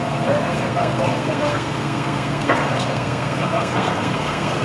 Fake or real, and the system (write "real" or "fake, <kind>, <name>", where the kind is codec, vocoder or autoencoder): fake, codec, SNAC